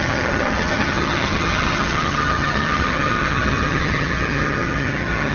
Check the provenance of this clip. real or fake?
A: fake